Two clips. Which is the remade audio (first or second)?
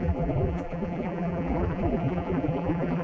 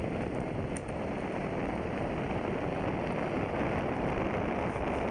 first